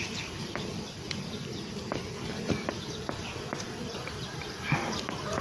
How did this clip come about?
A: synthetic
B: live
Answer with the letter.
A